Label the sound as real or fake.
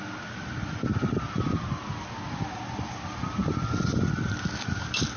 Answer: real